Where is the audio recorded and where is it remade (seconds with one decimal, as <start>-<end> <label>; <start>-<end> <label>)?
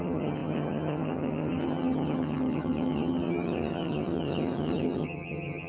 0.0-5.7 remade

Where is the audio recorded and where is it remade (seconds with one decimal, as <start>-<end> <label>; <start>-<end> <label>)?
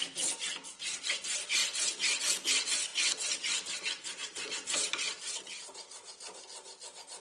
0.0-7.2 recorded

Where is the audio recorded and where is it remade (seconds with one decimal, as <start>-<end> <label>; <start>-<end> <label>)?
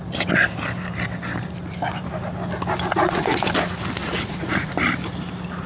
0.0-2.9 recorded; 2.9-3.5 remade; 3.5-4.0 recorded; 4.0-4.7 remade; 4.7-5.7 recorded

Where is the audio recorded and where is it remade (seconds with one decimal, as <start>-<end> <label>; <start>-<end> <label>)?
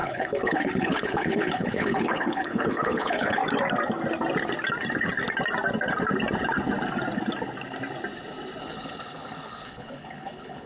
0.0-3.4 remade; 3.4-8.6 recorded; 8.6-10.7 remade